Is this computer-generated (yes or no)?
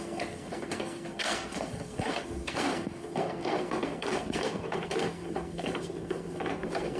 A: yes